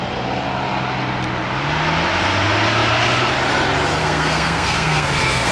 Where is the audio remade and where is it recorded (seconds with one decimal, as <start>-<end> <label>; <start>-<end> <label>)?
0.0-4.0 recorded; 4.0-5.5 remade